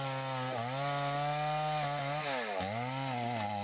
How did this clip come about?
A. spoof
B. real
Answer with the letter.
B